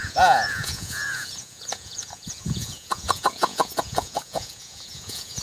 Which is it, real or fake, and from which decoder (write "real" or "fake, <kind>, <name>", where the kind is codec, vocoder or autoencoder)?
fake, vocoder, Vocos